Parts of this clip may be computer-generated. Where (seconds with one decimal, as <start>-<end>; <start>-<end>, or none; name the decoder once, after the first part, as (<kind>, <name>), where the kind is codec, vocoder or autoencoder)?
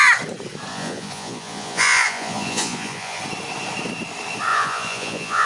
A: 0.7-3.2 (vocoder, Vocos); 4.5-5.5